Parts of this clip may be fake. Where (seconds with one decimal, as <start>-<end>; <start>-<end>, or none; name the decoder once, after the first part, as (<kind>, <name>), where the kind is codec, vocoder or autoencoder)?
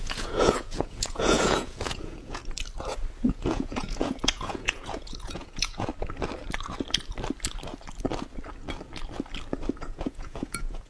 0.0-2.4 (vocoder, Vocos); 3.2-5.9; 9.8-10.9